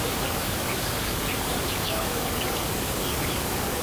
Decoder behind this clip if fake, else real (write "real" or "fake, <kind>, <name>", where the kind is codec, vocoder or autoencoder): fake, codec, DAC